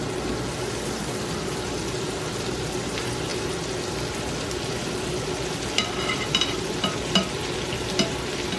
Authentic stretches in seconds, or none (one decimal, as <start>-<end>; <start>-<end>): 0.0-8.6